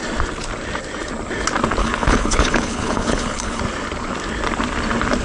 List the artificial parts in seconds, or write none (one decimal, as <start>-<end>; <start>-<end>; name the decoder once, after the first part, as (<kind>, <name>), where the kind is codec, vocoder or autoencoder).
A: 1.8-3.6 (codec, HILCodec)